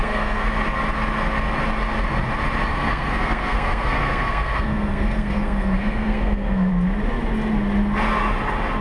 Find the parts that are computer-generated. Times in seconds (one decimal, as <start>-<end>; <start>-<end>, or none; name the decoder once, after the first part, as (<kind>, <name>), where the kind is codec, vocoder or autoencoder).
0.0-0.5 (codec, SNAC); 2.7-6.7